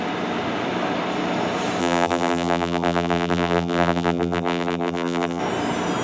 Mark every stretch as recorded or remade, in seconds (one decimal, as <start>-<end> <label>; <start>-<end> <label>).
0.0-1.8 recorded; 1.8-5.4 remade; 5.4-6.0 recorded